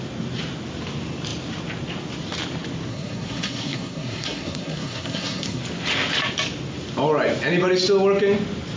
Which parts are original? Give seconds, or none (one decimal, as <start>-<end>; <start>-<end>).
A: 0.0-2.9; 5.6-8.8

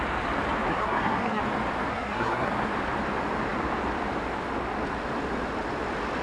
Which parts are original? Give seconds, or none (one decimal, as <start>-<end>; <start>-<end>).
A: 0.0-0.7; 1.4-1.9; 2.5-6.2

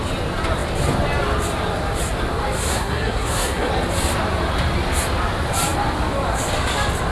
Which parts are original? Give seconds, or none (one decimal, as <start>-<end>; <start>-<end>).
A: 0.0-2.7; 3.7-7.1

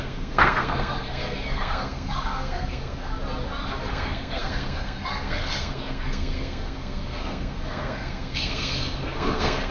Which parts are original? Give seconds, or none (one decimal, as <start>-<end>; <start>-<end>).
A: 3.1-3.9

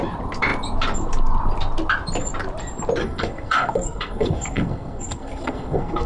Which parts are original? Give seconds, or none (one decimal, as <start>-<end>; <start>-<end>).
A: 0.0-3.0

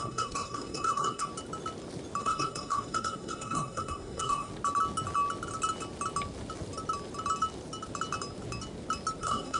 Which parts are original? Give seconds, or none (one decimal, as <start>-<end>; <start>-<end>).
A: 1.3-2.2; 4.5-9.2

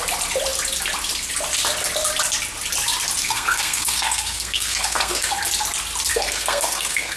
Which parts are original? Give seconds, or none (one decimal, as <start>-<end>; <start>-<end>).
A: 0.0-3.2; 5.3-6.1

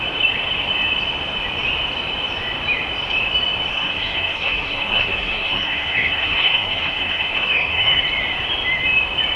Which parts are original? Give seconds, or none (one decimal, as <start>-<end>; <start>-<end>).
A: 0.0-3.7; 8.0-9.4